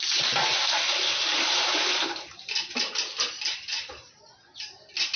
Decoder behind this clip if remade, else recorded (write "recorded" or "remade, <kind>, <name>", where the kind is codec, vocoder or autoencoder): recorded